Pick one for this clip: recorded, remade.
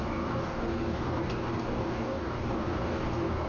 remade